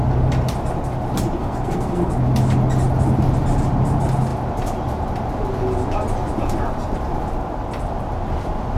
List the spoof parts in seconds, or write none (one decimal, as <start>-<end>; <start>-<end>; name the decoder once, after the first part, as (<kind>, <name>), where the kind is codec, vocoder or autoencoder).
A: 1.4-2.1 (codec, SNAC)